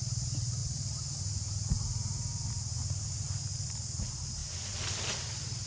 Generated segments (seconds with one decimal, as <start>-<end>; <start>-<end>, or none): none